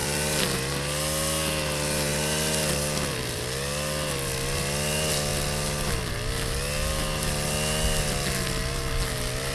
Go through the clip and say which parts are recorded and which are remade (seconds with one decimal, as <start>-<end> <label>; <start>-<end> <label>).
0.0-0.7 remade; 0.7-2.1 recorded; 2.1-3.4 remade; 3.4-9.5 recorded